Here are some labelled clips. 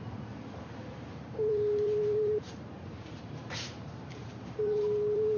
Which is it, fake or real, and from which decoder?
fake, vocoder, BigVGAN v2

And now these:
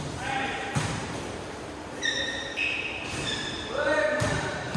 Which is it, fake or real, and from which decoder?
fake, vocoder, BigVGAN v2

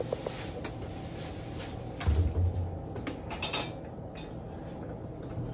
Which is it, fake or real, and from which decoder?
real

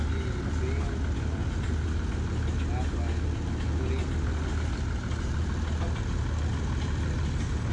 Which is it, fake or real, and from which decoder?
real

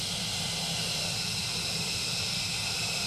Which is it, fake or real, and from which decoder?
real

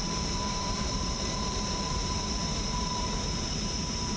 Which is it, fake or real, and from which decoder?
fake, vocoder, BigVGAN v2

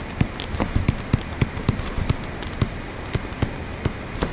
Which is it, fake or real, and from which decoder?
real